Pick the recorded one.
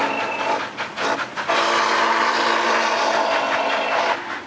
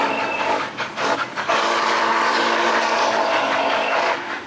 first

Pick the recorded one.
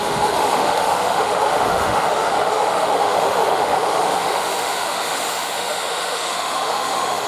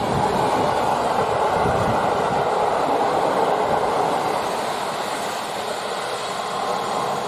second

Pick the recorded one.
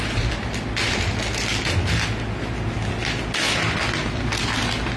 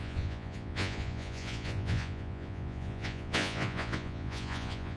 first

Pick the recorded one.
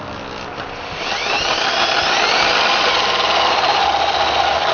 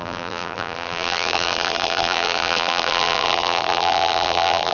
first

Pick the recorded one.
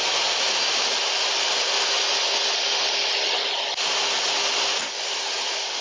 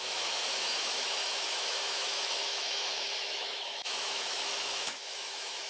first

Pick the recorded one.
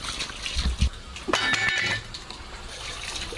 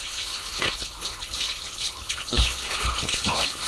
first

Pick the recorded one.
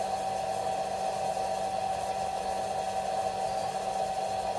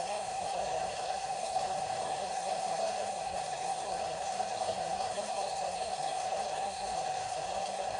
first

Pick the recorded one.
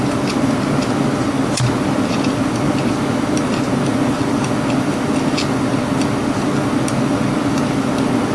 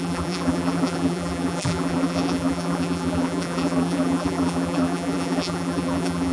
first